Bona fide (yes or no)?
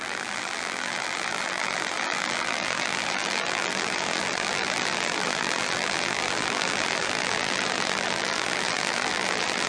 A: no